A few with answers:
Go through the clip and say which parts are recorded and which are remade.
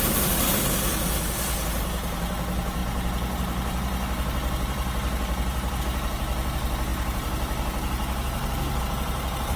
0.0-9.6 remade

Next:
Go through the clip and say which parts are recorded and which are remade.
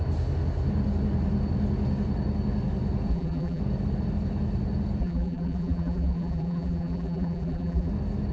0.0-3.1 recorded; 3.1-3.6 remade; 3.6-5.0 recorded; 5.0-7.9 remade; 7.9-8.3 recorded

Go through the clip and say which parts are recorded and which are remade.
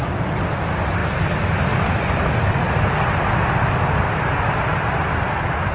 0.0-5.7 recorded